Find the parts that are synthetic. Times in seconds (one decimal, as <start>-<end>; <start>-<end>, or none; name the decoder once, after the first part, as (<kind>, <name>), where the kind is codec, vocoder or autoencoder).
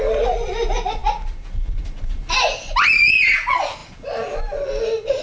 none